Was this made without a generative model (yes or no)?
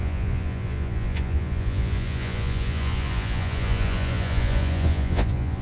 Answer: no